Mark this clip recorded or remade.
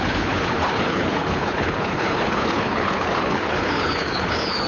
remade